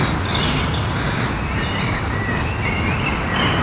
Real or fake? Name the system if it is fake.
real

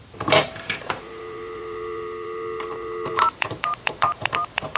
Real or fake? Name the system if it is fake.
fake, vocoder, BigVGAN v2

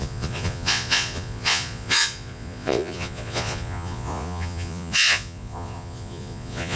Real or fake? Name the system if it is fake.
fake, vocoder, Vocos